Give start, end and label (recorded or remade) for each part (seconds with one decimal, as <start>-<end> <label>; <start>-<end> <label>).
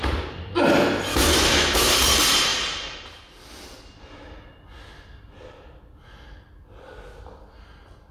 0.0-1.1 recorded; 1.1-1.9 remade; 1.9-8.1 recorded